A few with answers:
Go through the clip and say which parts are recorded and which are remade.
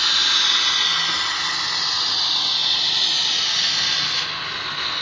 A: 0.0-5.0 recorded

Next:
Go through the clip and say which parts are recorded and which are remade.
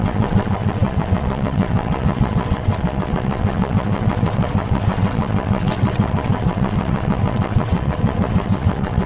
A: 0.0-9.1 remade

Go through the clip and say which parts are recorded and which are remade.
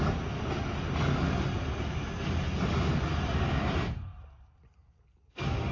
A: 0.0-5.7 recorded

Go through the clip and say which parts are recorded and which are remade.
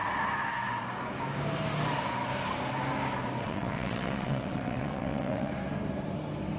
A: 0.0-3.4 recorded; 3.4-5.5 remade; 5.5-6.6 recorded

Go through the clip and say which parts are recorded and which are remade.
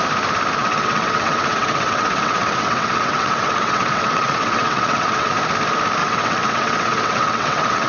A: 0.0-0.6 recorded; 0.6-5.3 remade; 5.3-6.0 recorded; 6.0-7.9 remade